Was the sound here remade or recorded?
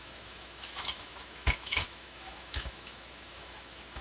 remade